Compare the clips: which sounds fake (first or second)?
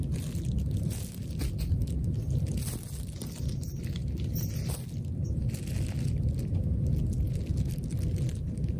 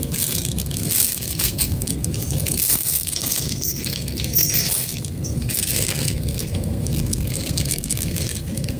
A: second